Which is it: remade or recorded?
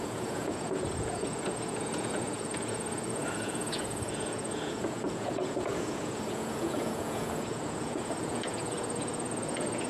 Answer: remade